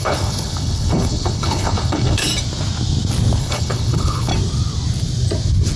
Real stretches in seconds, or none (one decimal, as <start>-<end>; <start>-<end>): 2.3-3.4; 4.3-5.8